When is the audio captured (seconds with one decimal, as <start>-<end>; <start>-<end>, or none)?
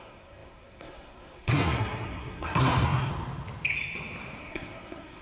3.1-4.4